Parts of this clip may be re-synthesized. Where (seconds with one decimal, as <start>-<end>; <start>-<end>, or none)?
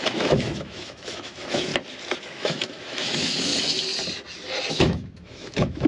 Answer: 0.0-1.7; 2.2-3.5; 4.7-5.9